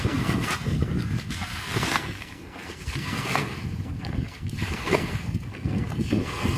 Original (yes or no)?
no